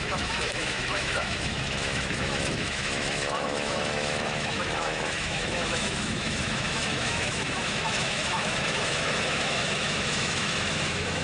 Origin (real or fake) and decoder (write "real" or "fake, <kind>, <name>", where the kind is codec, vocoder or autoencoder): fake, autoencoder, DAC-VAE